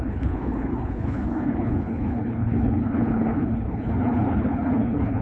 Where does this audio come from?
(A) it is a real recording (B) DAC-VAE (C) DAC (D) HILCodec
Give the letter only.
D